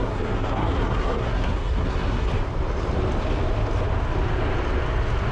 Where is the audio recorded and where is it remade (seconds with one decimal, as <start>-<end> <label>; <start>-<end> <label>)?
0.0-2.3 remade; 2.3-5.3 recorded